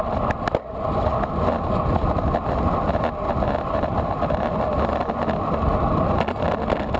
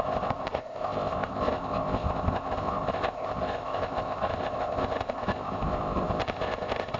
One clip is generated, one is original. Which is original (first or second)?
first